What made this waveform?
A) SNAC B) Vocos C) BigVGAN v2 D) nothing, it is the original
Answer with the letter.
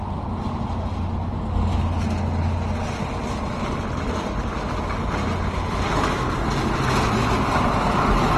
D